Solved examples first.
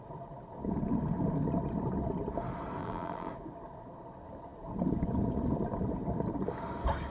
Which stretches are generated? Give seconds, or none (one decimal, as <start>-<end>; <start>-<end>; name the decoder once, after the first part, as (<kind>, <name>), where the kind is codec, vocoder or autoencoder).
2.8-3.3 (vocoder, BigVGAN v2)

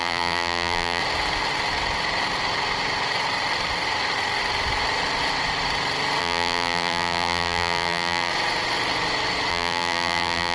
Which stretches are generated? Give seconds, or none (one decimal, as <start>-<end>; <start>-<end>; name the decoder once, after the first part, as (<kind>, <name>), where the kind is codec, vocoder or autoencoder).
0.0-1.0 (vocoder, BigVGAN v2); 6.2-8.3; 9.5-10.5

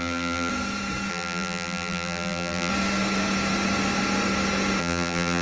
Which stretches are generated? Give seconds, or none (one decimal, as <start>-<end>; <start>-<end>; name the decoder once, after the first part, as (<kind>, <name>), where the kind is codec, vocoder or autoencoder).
0.0-0.5 (vocoder, BigVGAN v2); 1.1-2.7; 4.8-5.4

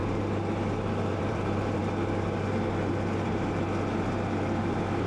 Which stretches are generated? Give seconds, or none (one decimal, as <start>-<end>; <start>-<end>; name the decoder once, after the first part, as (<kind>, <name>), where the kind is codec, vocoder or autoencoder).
1.1-1.8 (vocoder, BigVGAN v2)

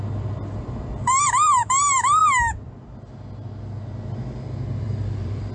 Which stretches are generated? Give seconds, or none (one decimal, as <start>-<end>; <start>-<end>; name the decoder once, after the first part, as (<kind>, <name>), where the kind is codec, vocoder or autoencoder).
0.0-2.2 (vocoder, BigVGAN v2); 4.8-5.5